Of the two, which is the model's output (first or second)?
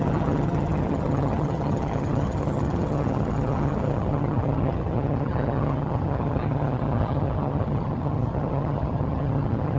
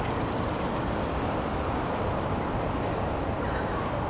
first